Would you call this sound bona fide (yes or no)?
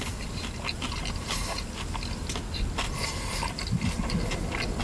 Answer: yes